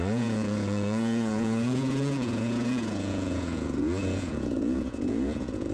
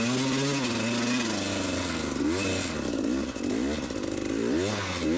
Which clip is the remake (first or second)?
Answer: first